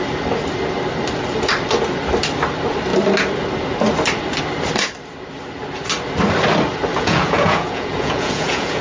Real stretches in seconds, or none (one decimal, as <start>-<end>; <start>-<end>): 0.0-6.9